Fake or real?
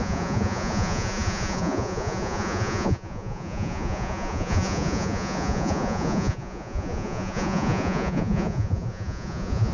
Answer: fake